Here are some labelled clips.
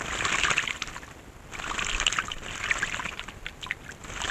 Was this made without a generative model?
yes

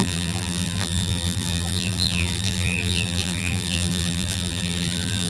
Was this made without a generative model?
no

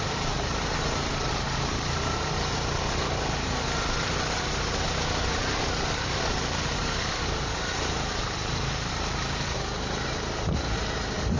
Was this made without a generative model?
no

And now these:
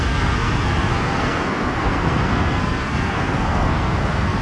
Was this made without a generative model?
no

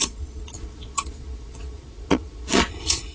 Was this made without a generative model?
no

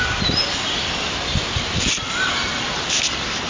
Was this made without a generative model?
yes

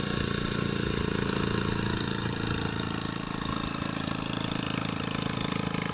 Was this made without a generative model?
yes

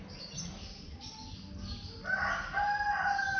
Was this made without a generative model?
yes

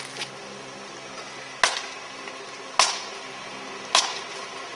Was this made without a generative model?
yes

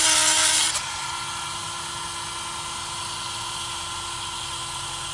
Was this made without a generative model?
yes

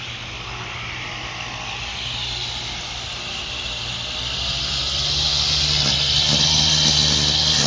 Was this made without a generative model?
yes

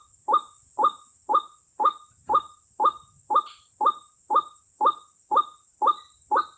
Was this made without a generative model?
yes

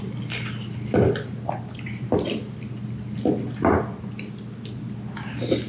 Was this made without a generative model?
yes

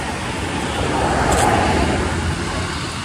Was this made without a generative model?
yes